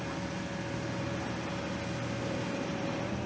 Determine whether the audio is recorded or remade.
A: recorded